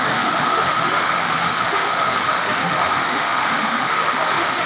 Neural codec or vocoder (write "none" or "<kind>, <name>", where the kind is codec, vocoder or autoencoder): autoencoder, DAC-VAE